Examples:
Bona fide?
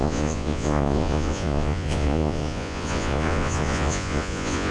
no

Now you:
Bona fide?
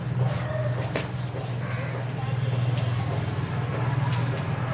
yes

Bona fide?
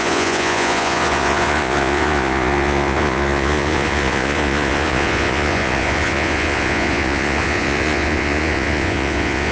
no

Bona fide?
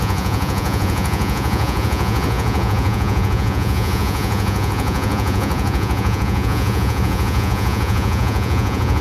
no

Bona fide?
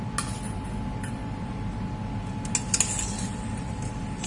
yes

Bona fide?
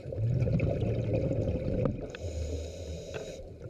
yes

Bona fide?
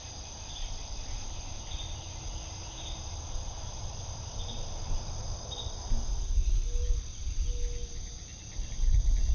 yes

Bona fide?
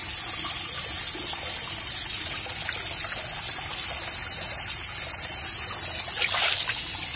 yes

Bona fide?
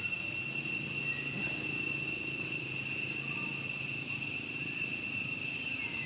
yes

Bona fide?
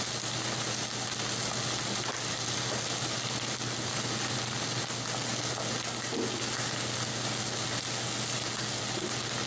yes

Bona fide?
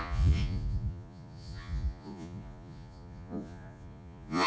no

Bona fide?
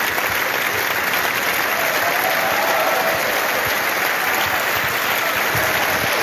yes